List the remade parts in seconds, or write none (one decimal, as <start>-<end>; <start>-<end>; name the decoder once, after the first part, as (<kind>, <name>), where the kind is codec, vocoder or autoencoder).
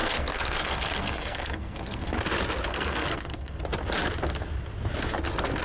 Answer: 0.0-2.1 (codec, SNAC); 2.7-3.6